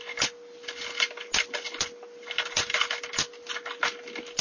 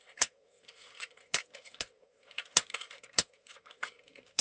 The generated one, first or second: second